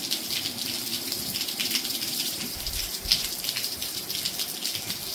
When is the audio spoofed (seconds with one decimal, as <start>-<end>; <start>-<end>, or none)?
0.9-4.0